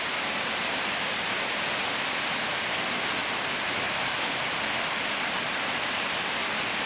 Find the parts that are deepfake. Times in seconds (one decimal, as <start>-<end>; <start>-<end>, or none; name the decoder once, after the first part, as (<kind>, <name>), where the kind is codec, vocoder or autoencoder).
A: none